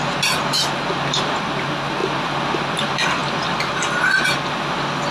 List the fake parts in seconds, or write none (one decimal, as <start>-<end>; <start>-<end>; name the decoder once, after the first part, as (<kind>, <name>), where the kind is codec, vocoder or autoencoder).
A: none